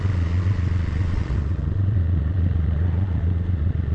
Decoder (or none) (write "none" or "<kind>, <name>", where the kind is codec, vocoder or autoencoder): vocoder, Vocos